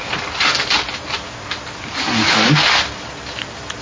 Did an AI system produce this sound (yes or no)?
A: no